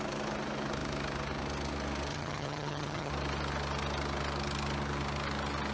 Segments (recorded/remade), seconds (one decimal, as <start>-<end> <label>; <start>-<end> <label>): 0.0-2.1 recorded; 2.1-3.1 remade; 3.1-5.7 recorded